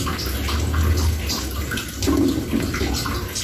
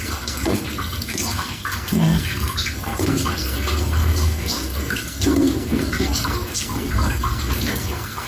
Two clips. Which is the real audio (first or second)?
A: first